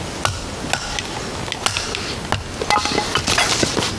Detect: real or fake real